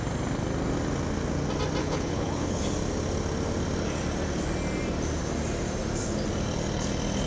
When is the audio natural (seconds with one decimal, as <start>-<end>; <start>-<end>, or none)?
0.0-1.8; 2.6-7.3